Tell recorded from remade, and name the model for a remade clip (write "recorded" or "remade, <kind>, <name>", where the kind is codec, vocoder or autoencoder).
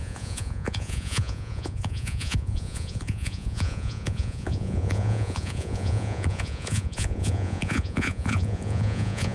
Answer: remade, vocoder, Vocos